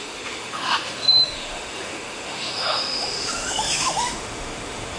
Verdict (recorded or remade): remade